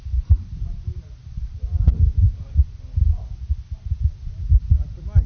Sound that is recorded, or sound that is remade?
recorded